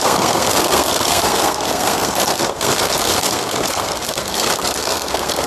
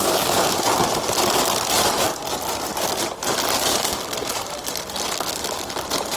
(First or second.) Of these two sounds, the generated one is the first